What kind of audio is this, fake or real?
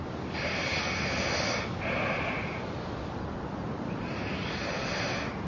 real